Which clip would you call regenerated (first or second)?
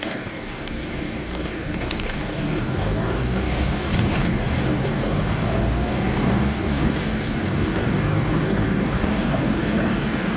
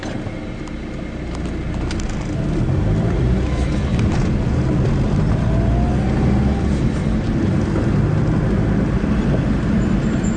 first